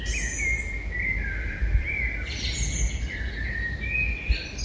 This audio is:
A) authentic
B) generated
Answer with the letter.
A